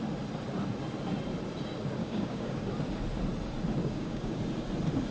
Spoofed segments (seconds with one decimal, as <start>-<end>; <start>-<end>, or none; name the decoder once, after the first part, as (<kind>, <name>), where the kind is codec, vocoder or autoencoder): 2.0-2.7 (codec, DAC); 3.8-4.4